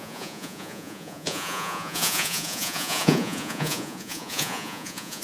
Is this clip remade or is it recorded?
remade